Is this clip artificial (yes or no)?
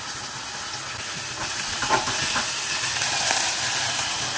no